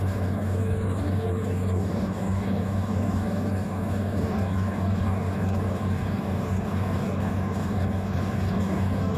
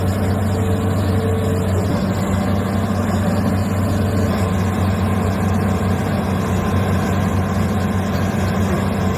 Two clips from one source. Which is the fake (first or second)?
first